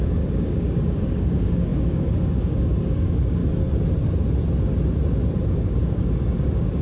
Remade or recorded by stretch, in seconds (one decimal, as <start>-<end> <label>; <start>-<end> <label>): 0.0-3.4 remade; 3.4-5.4 recorded; 5.4-6.8 remade